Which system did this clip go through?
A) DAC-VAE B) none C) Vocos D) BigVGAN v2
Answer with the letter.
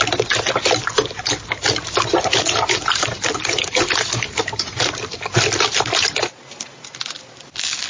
B